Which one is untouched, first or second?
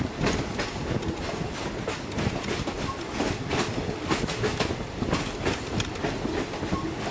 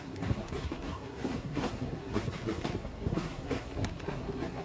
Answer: first